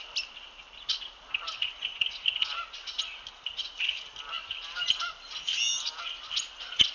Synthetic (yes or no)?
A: no